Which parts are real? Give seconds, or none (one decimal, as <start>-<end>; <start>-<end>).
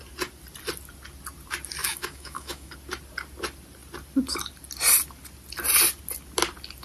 0.0-1.8; 2.7-6.8